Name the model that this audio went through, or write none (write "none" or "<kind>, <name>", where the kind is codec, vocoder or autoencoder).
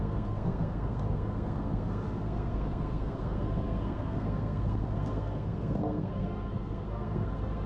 codec, SNAC